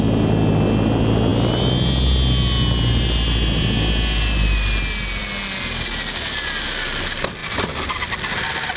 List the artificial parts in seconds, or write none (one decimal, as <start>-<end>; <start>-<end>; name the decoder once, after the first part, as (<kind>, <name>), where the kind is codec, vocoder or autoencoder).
none